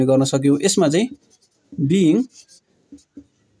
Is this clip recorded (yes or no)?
yes